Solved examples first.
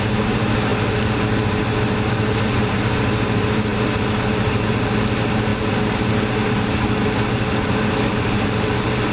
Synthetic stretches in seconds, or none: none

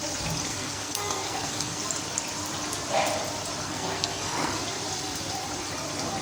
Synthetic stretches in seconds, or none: 0.5-1.9 (codec, SNAC); 3.6-4.6

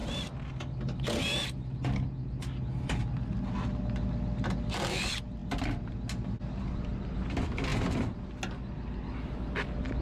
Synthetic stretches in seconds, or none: none

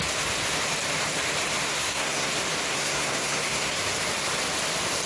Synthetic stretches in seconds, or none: 1.7-2.3 (codec, SNAC); 2.7-3.8